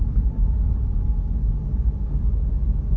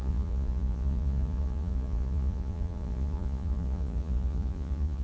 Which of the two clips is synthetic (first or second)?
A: second